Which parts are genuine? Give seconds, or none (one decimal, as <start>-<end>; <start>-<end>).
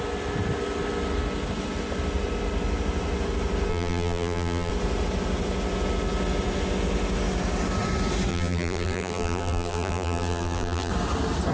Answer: 0.0-3.7; 4.7-8.3; 10.9-11.5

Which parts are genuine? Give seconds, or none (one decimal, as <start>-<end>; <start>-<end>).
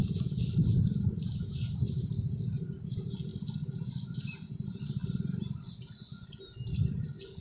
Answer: 0.0-0.8; 3.3-3.8; 5.0-7.4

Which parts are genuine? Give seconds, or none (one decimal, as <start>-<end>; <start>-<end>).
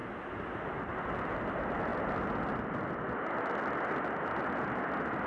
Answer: 0.0-5.3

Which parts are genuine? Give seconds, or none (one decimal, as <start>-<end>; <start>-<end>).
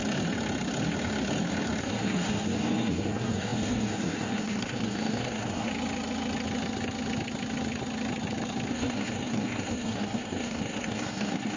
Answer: 0.0-1.8; 5.7-8.7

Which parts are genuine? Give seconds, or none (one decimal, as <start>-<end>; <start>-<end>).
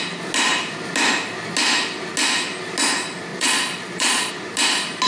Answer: 0.0-3.3; 4.3-5.1